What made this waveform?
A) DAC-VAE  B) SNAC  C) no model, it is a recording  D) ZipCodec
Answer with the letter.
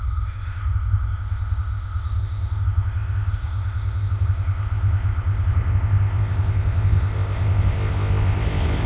D